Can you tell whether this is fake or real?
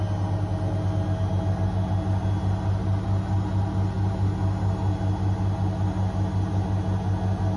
real